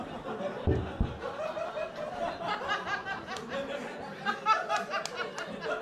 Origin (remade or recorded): recorded